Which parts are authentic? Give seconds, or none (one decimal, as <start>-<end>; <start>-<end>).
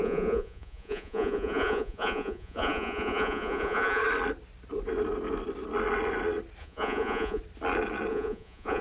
4.0-6.6; 7.4-8.1